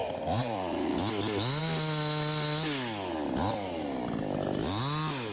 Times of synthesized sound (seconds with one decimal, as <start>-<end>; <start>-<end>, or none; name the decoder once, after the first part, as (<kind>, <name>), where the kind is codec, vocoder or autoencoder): 0.0-1.0 (vocoder, Vocos)